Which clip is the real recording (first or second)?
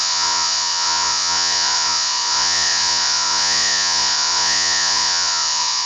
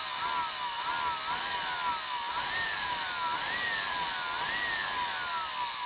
second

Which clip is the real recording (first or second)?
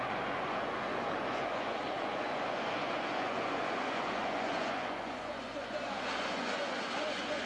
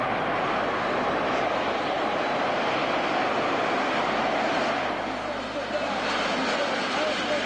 second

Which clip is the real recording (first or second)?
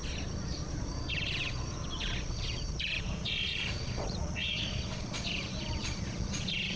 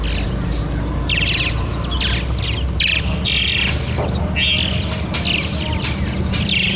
second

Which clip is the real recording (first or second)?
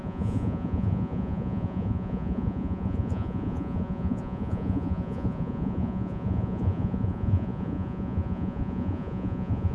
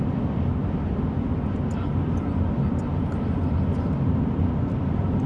second